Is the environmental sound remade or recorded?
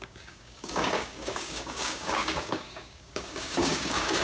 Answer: remade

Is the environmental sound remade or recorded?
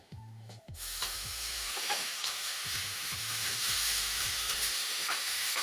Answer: remade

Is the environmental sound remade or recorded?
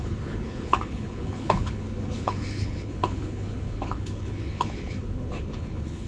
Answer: remade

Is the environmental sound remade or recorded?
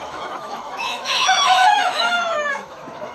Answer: remade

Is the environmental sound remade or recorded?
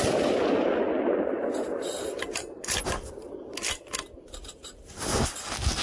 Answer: recorded